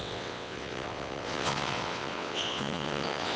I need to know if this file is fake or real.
fake